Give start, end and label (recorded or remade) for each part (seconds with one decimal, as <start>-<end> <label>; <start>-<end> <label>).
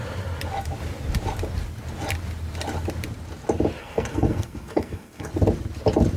0.0-3.8 recorded; 3.8-5.3 remade; 5.3-6.2 recorded